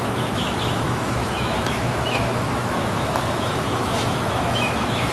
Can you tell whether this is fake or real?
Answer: fake